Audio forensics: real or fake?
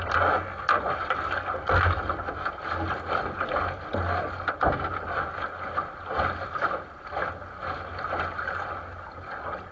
real